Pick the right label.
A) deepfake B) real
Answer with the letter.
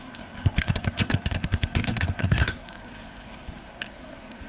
A